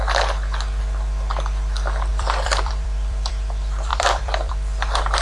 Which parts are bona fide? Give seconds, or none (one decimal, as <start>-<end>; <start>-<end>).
0.0-2.1; 3.3-3.9; 4.5-5.2